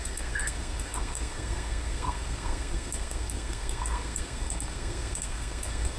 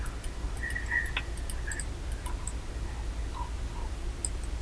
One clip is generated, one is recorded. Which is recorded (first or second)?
second